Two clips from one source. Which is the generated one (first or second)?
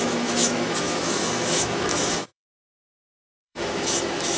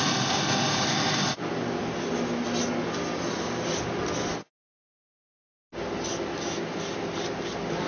first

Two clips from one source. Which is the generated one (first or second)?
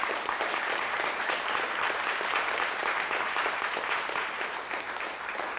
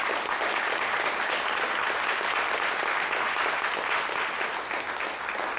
first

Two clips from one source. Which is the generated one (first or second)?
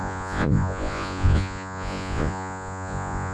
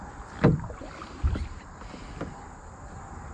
first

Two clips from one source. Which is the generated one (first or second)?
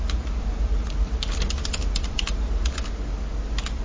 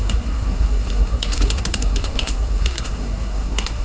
second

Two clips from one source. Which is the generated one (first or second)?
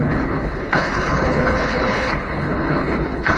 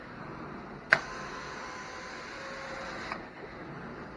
first